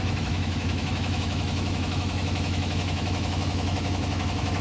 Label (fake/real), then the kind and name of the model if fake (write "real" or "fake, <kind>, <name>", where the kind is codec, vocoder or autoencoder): fake, autoencoder, DAC-VAE